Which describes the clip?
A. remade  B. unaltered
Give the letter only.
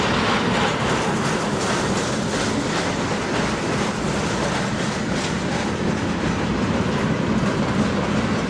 B